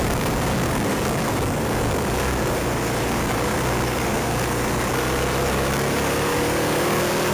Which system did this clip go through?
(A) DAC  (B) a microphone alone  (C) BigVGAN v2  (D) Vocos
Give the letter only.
A